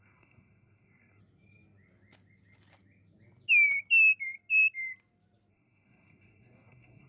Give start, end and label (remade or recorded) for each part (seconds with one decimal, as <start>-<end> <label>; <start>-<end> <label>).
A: 0.0-1.2 remade; 1.2-5.5 recorded; 5.5-7.1 remade